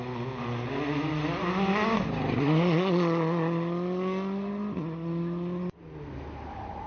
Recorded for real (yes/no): yes